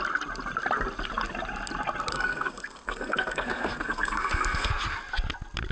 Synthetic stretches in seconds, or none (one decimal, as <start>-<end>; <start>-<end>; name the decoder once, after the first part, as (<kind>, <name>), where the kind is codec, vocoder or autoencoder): 2.1-4.7 (codec, SNAC)